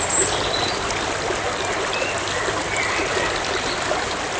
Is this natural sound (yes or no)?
yes